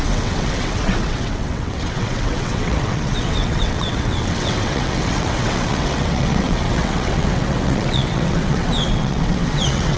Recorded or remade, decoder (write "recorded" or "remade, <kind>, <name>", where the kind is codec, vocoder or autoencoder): remade, vocoder, WaveNeXt